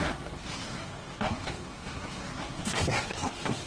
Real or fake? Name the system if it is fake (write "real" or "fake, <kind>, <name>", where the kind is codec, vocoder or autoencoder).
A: fake, codec, SNAC